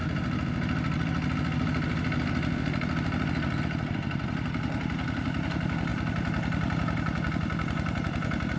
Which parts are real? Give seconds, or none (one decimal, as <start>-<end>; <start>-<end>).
0.0-8.6